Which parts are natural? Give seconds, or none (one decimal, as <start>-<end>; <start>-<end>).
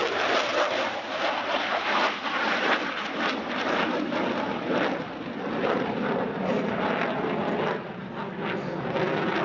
0.0-9.4